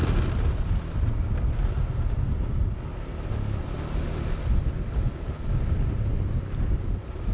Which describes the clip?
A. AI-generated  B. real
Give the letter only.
B